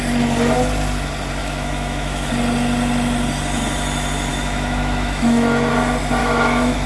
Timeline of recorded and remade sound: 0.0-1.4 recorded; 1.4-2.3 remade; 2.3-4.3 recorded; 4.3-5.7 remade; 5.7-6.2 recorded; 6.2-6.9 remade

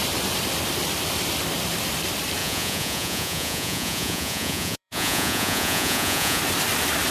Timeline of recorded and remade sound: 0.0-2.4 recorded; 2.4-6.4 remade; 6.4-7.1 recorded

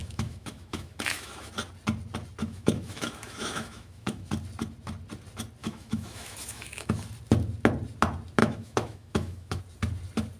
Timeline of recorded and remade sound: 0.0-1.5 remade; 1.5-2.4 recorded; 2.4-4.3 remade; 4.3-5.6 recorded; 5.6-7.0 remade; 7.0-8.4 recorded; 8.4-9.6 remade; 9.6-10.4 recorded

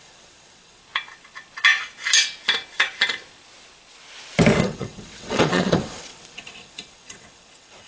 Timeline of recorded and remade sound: 0.0-0.8 remade; 0.8-4.6 recorded; 4.6-7.9 remade

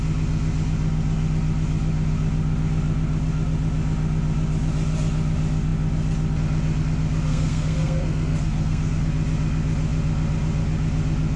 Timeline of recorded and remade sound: 0.0-7.3 recorded; 7.3-9.0 remade; 9.0-11.4 recorded

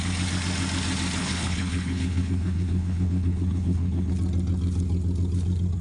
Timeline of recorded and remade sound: 0.0-1.2 recorded; 1.2-4.1 remade; 4.1-5.8 recorded